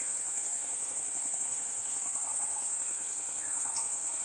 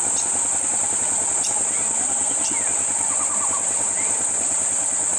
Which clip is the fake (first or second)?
first